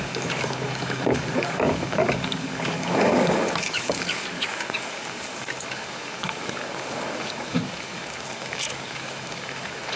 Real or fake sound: fake